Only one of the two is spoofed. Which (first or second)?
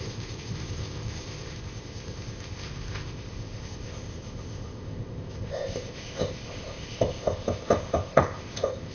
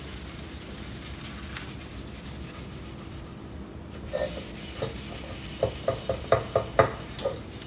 first